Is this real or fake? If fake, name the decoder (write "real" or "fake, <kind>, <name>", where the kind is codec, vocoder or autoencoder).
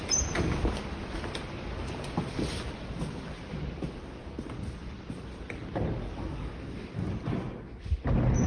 real